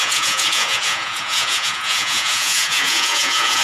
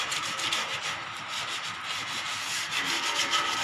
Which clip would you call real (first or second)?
second